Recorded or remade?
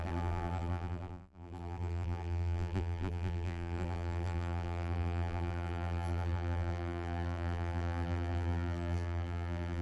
remade